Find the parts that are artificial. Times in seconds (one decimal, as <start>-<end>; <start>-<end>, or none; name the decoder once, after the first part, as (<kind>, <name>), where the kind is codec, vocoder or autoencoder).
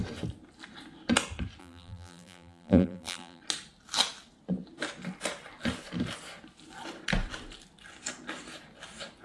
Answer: 1.6-3.4 (vocoder, BigVGAN v2)